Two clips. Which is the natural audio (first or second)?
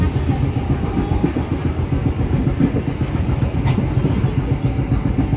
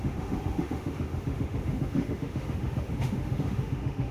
first